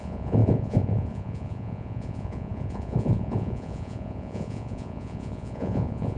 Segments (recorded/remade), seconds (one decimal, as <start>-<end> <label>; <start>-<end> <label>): 0.0-6.2 remade